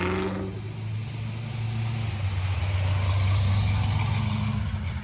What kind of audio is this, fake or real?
real